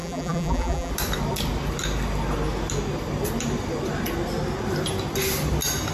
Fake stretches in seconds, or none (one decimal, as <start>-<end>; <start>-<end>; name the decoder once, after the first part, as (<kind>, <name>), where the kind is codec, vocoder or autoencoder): 0.0-0.9 (vocoder, BigVGAN v2)